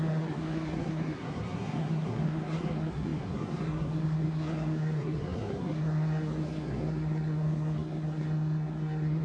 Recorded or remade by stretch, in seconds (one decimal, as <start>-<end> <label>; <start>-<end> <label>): 0.0-9.2 remade